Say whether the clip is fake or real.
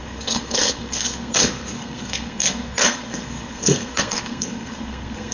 fake